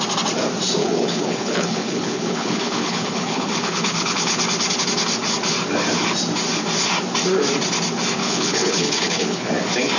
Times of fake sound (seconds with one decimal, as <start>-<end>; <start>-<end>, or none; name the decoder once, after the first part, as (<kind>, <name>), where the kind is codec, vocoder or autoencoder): 0.8-4.4 (codec, HILCodec); 8.2-9.5